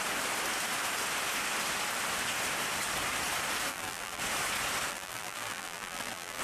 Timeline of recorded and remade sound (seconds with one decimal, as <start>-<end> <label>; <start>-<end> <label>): 0.0-3.7 recorded; 3.7-4.2 remade; 4.2-4.9 recorded; 4.9-6.4 remade